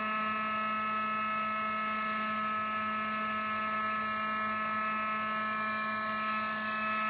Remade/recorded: recorded